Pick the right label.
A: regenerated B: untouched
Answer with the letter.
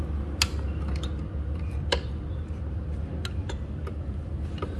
B